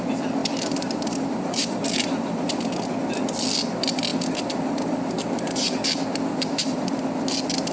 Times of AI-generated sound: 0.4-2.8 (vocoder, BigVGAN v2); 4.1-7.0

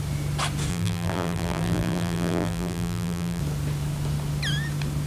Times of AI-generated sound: 0.7-3.4 (vocoder, BigVGAN v2)

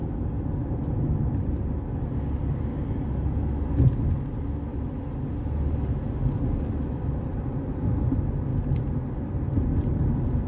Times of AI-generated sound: none